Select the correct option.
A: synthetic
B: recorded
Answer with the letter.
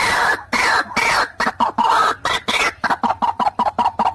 A